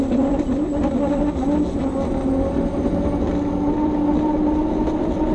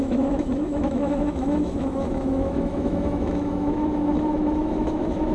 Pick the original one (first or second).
first